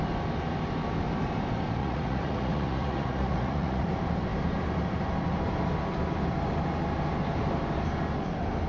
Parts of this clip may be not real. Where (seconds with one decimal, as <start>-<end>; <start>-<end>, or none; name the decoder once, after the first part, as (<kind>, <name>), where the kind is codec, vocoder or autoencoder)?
1.8-3.9 (vocoder, Vocos)